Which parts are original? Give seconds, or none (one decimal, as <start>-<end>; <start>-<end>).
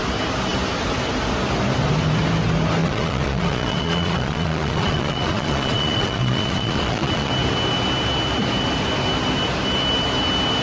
0.0-2.8; 7.3-10.6